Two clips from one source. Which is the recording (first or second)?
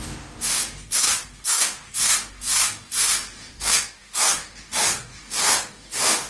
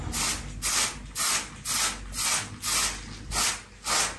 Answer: second